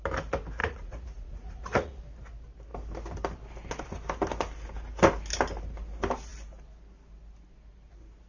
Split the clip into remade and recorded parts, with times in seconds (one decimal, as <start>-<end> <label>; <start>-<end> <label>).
0.0-0.6 recorded; 0.6-2.0 remade; 2.0-8.3 recorded